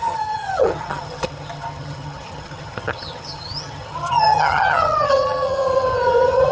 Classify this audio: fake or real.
fake